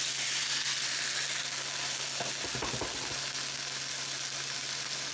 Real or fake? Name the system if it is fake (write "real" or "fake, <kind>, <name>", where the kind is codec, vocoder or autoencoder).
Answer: real